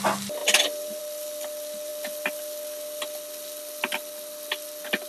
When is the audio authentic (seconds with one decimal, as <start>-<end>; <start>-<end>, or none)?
0.0-0.4; 1.0-5.1